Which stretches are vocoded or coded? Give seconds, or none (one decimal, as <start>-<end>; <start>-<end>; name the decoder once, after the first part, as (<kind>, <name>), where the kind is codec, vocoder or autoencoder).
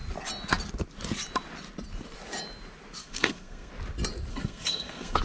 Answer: 3.0-3.7 (codec, SNAC); 4.3-5.2